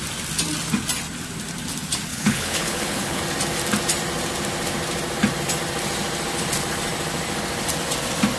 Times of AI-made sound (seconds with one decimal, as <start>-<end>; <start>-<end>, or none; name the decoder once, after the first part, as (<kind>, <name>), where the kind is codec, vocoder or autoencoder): 2.1-3.2 (codec, HILCodec)

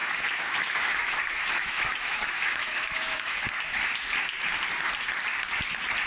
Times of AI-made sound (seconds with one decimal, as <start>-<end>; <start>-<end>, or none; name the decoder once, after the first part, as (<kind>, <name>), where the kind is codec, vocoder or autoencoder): 0.0-3.4 (autoencoder, DAC-VAE)

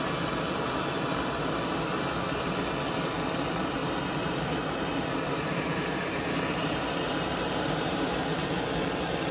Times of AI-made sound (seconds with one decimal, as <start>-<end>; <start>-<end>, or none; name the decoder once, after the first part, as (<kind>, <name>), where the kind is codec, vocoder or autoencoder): 3.8-8.2 (vocoder, BigVGAN v2)

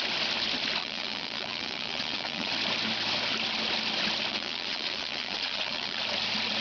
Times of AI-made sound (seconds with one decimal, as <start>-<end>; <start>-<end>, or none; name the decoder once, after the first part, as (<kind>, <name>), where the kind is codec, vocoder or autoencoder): 0.8-2.5 (vocoder, Vocos); 4.3-6.0